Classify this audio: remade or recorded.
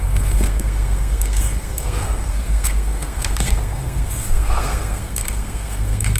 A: remade